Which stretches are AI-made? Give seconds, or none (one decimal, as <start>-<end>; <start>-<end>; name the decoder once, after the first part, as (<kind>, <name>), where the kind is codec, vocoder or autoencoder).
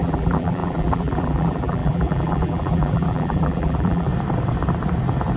0.0-4.1 (vocoder, BigVGAN v2)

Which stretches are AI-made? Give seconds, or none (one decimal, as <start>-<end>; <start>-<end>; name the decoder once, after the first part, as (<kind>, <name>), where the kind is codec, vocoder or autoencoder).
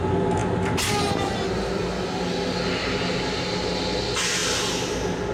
none